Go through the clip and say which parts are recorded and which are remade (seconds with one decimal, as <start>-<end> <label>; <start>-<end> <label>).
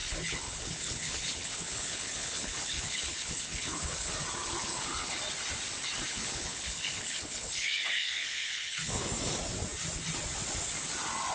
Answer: 0.0-4.1 remade; 4.1-4.6 recorded; 4.6-5.2 remade; 5.2-6.1 recorded; 6.1-9.1 remade; 9.1-11.3 recorded